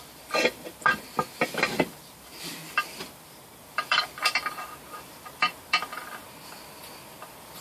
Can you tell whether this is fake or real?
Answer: fake